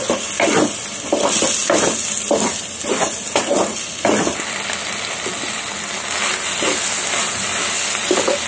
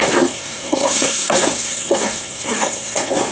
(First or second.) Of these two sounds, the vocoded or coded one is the second